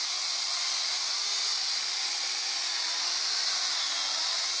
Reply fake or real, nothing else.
real